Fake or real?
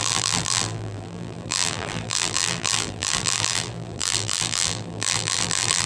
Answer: fake